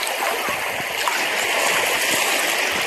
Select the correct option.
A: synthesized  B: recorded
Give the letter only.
B